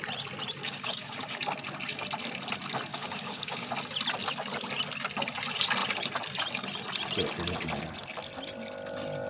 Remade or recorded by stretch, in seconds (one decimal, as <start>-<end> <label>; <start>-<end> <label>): 0.0-0.6 recorded; 0.6-1.4 remade; 1.4-2.9 recorded; 2.9-3.7 remade; 3.7-9.3 recorded